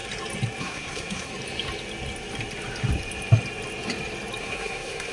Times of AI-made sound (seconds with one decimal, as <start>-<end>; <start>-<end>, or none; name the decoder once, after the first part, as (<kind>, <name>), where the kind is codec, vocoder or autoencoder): 0.6-1.3 (codec, SNAC); 4.4-5.1